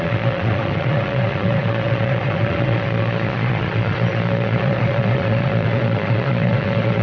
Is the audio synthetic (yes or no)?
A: yes